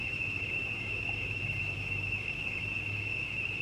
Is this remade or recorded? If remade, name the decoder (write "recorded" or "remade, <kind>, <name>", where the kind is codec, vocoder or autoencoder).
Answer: remade, autoencoder, DAC-VAE